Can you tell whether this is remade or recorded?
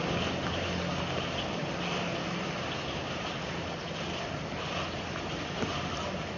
recorded